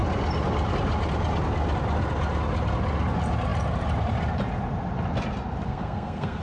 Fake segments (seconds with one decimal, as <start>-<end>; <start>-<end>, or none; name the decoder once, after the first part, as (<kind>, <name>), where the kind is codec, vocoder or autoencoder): 5.7-6.4 (codec, SNAC)